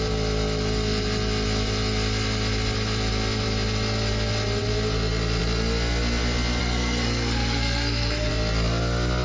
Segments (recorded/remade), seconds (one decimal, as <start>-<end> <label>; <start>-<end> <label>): 0.0-6.6 recorded; 6.6-8.3 remade; 8.3-9.2 recorded